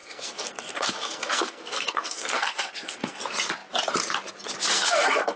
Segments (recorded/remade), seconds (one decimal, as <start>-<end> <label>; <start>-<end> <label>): 0.0-3.2 remade; 3.2-4.7 recorded; 4.7-5.4 remade